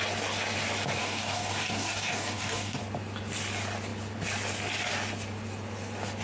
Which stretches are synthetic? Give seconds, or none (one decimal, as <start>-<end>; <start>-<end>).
1.0-2.8